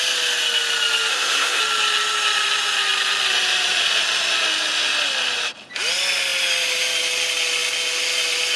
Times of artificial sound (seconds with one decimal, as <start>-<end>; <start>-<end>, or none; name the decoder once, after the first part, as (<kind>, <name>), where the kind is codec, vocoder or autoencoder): 1.1-1.6 (codec, SNAC)